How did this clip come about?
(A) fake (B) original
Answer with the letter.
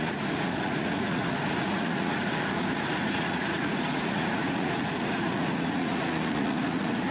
A